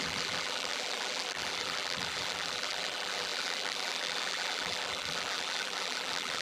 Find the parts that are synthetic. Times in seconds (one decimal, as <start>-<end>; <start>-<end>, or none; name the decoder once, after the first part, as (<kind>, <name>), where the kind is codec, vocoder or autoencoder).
0.0-6.4 (vocoder, BigVGAN v2)

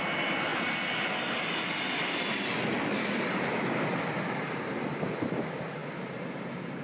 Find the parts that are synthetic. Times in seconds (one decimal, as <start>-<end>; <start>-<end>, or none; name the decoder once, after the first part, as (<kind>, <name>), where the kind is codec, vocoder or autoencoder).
none

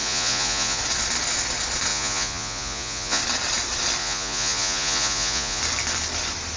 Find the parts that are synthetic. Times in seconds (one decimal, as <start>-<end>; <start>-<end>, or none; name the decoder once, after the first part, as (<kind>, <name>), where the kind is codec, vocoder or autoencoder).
0.0-0.8 (vocoder, Vocos); 1.9-3.2; 4.0-5.6

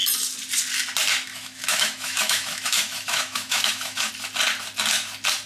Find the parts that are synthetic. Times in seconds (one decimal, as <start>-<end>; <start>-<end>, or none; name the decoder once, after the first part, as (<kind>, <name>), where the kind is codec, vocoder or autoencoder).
1.3-4.1 (autoencoder, DAC-VAE)